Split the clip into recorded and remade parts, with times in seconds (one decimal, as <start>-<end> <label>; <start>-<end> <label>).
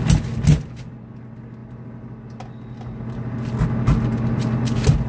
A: 0.0-5.1 recorded